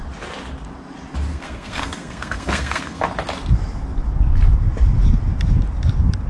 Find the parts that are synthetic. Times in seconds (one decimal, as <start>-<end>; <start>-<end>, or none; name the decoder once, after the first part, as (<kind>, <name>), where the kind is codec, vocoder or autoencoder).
1.3-3.0 (codec, SNAC)